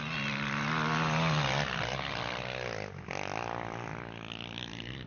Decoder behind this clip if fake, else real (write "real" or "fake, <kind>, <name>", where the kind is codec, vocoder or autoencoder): real